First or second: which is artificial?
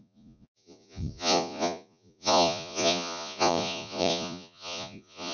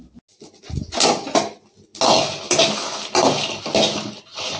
first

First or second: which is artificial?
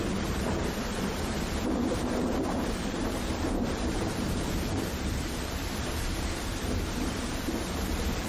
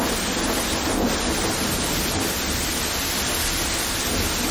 first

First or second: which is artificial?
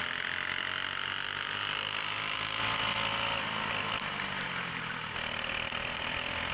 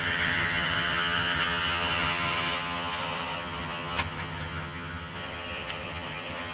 second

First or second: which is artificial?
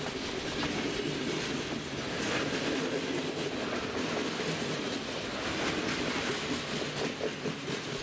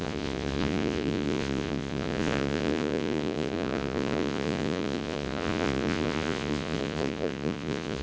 second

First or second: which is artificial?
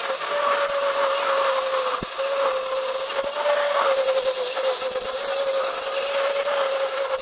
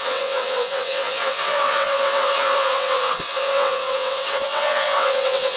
second